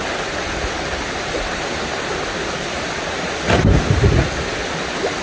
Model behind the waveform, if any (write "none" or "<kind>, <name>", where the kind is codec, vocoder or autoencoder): none